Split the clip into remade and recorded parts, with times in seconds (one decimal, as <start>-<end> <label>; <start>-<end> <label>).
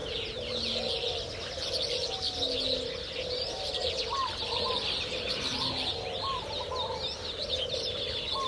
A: 0.0-8.5 recorded